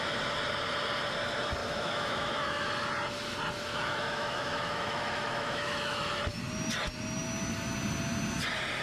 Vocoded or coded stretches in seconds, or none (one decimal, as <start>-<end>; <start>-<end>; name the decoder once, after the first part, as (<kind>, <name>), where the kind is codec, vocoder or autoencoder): 1.6-2.7 (autoencoder, DAC-VAE); 3.7-6.2

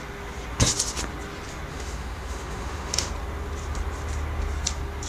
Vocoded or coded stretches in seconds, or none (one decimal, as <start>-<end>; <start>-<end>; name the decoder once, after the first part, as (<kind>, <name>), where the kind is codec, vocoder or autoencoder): 1.7-3.1 (autoencoder, DAC-VAE)

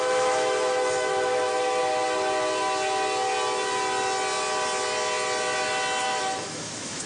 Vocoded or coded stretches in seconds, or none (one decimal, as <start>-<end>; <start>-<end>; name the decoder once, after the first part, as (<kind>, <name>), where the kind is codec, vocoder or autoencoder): 0.0-1.8 (autoencoder, DAC-VAE); 6.0-7.1

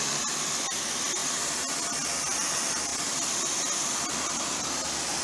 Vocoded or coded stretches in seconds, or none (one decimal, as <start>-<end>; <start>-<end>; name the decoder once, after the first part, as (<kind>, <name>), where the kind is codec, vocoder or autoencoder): none

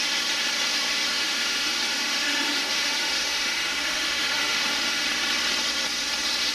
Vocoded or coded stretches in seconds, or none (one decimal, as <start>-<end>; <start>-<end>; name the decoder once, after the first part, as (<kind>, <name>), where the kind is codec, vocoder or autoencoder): 1.1-5.0 (autoencoder, DAC-VAE)

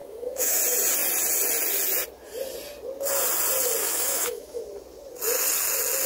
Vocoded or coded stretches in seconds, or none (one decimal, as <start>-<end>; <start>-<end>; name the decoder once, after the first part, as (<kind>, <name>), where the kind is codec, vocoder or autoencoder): 0.0-0.6 (autoencoder, DAC-VAE); 3.8-4.6